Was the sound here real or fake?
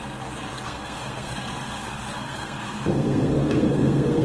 fake